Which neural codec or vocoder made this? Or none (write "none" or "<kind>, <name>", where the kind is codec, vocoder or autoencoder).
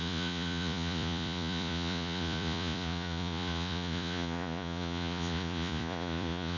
vocoder, Vocos